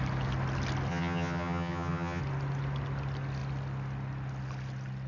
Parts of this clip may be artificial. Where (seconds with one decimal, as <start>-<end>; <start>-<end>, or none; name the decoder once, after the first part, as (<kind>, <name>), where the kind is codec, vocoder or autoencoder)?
0.9-2.2 (vocoder, HiFi-GAN)